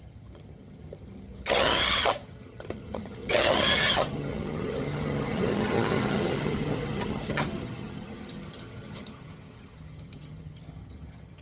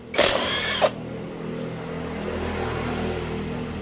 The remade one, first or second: first